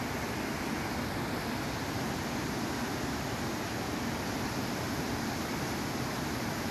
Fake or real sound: real